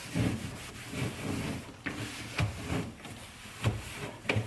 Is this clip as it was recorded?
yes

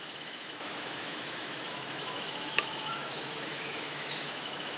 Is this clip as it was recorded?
no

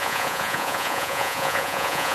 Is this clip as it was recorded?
no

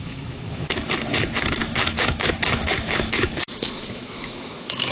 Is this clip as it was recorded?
no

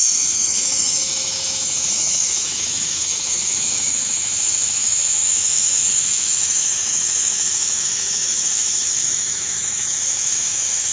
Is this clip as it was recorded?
no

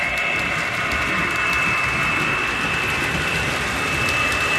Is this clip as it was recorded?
yes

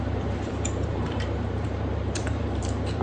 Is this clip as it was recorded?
no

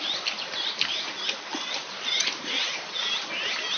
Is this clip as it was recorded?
yes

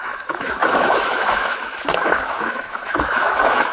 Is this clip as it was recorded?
no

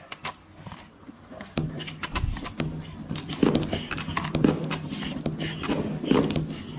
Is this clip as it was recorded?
yes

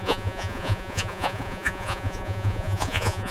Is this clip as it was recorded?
no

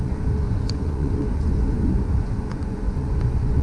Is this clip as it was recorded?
no